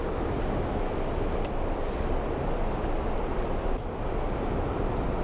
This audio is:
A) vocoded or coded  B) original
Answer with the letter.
B